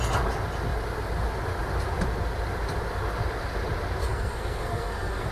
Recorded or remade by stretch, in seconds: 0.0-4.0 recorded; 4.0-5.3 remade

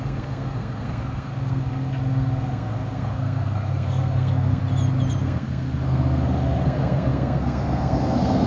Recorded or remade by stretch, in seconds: 0.0-4.6 remade; 4.6-5.2 recorded; 5.2-8.5 remade